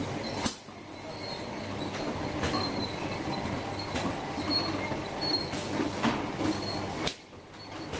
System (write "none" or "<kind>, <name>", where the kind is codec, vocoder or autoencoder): none